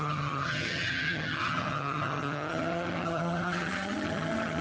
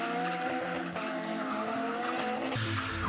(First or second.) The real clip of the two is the second